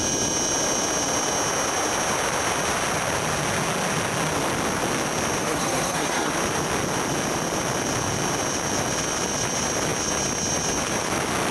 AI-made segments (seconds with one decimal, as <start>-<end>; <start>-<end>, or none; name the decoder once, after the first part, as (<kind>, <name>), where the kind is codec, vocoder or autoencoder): 5.4-6.3 (codec, SNAC)